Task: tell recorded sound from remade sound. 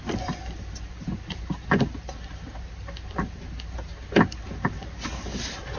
recorded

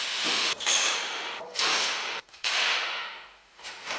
remade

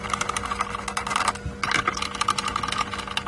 recorded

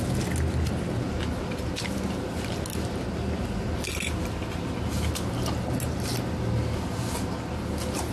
recorded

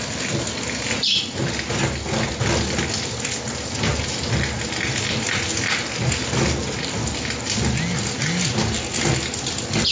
recorded